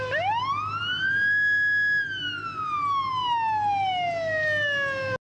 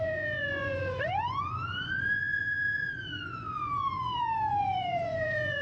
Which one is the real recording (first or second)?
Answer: first